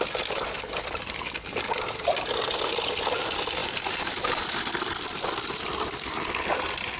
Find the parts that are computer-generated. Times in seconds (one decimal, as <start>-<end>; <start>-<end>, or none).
3.6-4.6